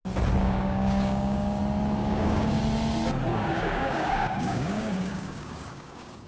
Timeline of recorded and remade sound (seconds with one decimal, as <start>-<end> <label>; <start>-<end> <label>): 0.0-0.4 recorded; 0.4-1.6 remade; 1.6-2.0 recorded; 2.0-2.6 remade; 2.6-3.3 recorded; 3.3-6.3 remade